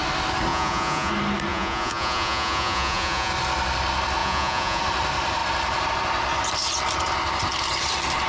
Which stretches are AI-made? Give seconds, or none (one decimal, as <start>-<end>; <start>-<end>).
0.5-1.1; 1.5-3.3; 4.2-4.8